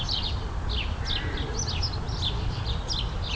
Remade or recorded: recorded